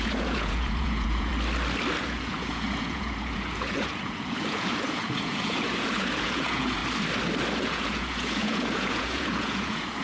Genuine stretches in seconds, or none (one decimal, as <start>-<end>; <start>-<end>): 1.3-2.0; 6.8-7.6

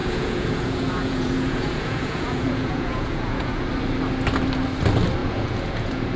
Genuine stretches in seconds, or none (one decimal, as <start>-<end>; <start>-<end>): 3.7-5.2

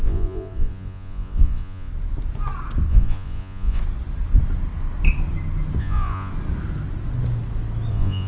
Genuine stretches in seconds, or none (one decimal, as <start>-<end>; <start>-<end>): 1.9-2.9; 3.8-5.8; 6.3-7.9

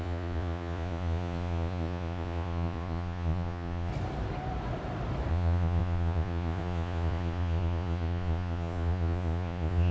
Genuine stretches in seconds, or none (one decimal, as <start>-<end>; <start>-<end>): 3.9-5.3

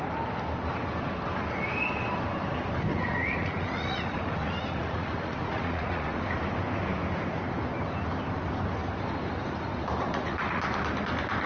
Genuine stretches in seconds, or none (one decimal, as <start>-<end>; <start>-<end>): 0.0-2.9; 6.2-10.0; 10.6-11.5